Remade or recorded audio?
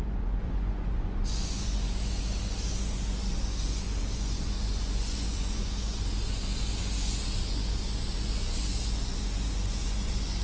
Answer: remade